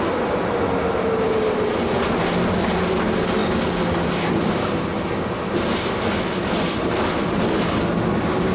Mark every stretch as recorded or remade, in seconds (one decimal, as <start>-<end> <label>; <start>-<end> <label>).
0.0-8.5 recorded